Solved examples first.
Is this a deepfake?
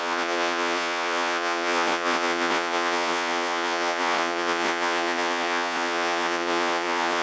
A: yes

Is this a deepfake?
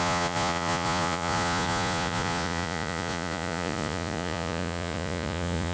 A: yes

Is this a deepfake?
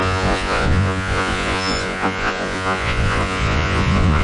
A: yes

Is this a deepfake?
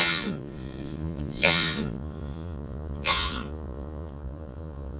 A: yes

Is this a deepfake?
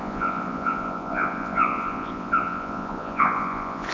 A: yes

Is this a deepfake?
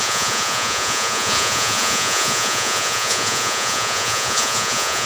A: yes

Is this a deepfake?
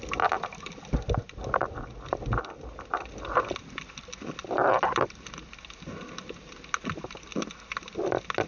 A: no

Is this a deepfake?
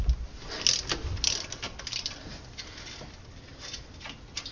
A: no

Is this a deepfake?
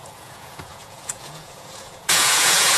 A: yes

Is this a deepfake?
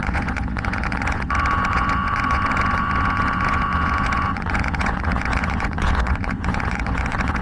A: yes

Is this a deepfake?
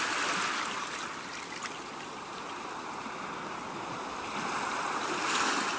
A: no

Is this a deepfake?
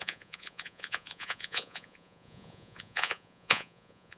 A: yes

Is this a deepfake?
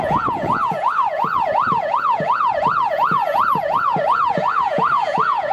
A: yes